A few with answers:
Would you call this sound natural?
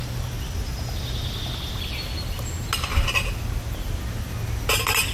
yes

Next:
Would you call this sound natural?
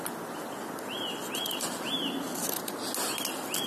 yes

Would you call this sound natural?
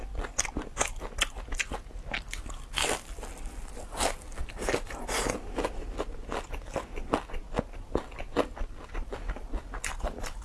yes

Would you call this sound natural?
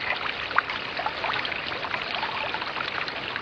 yes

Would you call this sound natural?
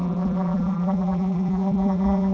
no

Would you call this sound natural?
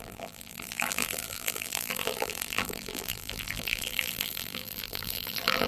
no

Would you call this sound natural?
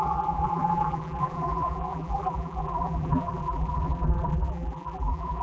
no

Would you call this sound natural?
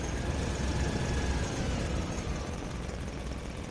yes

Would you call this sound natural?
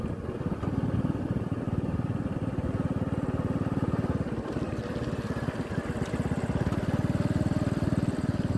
yes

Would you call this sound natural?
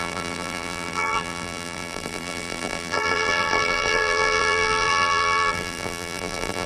no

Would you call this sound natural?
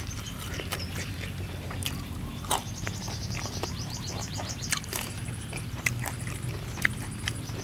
no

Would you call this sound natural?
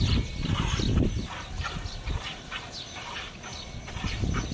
yes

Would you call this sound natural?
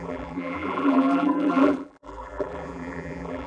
no